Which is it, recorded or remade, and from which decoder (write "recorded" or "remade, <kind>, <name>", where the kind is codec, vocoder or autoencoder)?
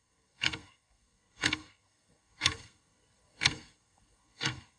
remade, codec, SNAC